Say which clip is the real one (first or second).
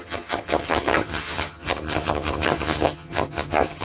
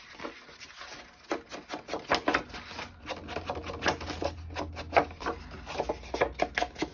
second